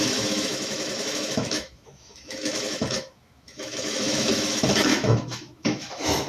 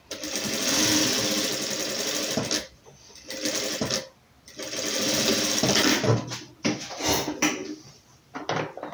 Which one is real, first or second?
second